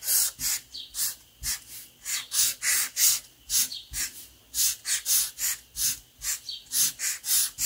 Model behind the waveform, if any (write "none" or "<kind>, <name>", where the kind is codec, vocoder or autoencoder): none